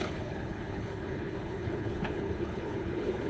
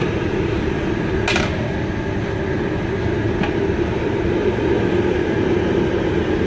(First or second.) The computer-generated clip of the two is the first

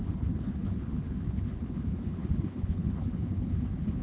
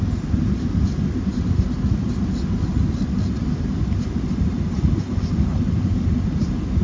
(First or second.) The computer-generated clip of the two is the first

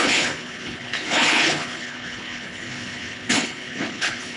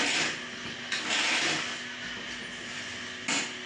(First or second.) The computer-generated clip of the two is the first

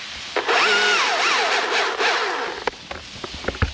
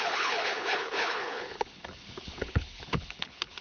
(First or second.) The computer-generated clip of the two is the second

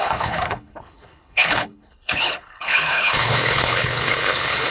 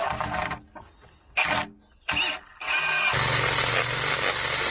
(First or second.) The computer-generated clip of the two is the first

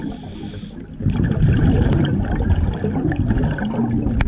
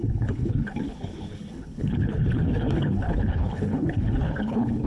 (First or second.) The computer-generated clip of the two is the second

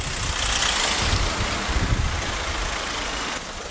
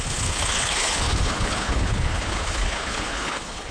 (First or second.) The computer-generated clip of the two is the second